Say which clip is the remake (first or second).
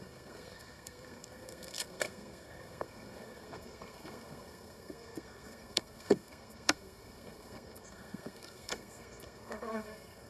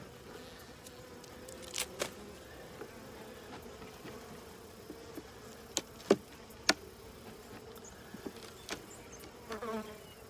first